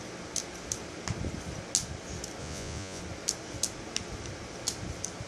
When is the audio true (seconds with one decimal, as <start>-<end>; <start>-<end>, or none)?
0.0-2.4; 3.0-5.3